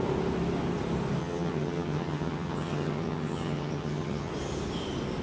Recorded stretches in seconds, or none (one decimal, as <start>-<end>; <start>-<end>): 0.0-1.2; 4.3-5.2